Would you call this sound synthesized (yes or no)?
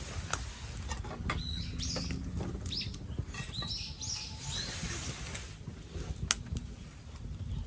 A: no